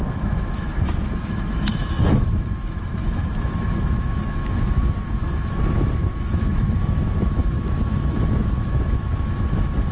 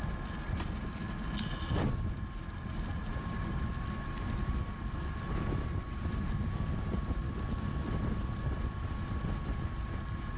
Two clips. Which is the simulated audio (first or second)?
first